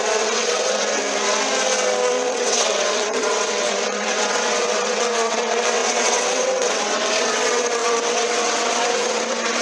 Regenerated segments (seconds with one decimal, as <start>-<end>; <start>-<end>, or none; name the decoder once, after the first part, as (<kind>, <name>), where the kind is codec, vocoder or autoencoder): 0.0-1.0 (vocoder, WaveNeXt); 2.3-9.6